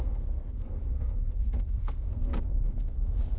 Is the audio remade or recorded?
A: remade